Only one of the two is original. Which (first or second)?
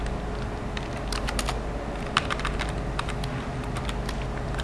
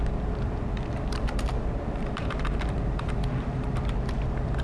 first